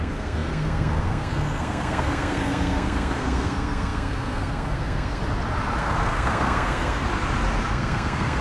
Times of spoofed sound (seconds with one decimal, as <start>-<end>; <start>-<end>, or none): 0.0-5.2; 5.8-7.0; 7.7-8.4